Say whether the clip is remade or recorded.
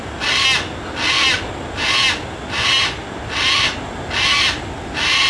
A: recorded